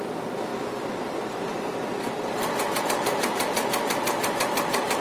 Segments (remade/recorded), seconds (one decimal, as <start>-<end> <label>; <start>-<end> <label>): 0.0-5.0 recorded